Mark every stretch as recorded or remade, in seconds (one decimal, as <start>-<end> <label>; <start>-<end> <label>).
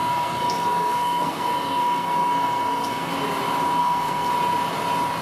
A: 0.0-3.1 remade; 3.1-3.8 recorded; 3.8-4.3 remade; 4.3-5.2 recorded